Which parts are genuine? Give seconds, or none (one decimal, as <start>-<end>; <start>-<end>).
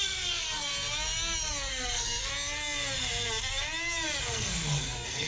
0.7-1.7; 2.3-4.2